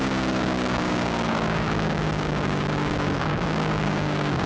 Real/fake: fake